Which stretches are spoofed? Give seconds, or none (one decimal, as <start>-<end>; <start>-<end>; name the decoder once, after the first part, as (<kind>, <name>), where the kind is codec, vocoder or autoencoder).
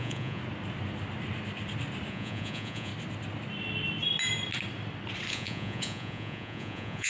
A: 0.0-0.4 (vocoder, Vocos); 2.1-2.9; 5.3-7.1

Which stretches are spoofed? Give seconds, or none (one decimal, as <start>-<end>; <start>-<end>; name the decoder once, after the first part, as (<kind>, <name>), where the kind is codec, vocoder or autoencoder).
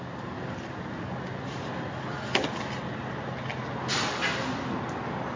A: none